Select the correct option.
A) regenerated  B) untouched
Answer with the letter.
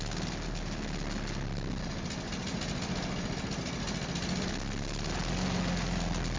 B